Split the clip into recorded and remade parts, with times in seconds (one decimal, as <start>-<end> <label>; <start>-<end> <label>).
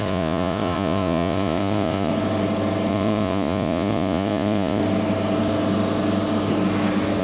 0.0-2.1 remade; 2.1-2.9 recorded; 2.9-4.8 remade; 4.8-7.2 recorded